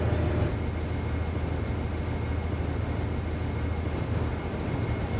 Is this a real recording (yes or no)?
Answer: yes